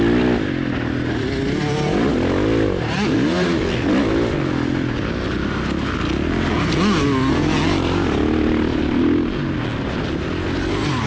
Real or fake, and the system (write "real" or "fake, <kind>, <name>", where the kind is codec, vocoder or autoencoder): real